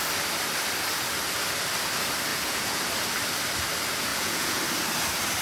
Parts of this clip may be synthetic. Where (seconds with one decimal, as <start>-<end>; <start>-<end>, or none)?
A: 2.3-2.8; 4.1-4.6